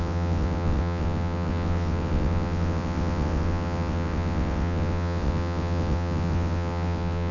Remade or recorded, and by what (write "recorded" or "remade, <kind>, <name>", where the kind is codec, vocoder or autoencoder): remade, vocoder, WaveNeXt